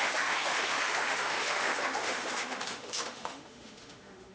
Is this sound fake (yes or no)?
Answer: yes